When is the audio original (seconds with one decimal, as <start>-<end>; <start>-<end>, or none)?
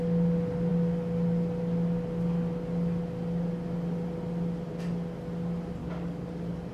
0.0-5.8